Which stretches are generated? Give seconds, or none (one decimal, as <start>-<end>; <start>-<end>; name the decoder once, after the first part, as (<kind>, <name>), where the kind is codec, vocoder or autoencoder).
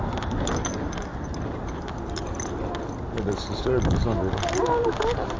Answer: none